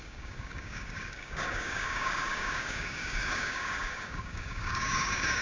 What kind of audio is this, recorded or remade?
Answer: remade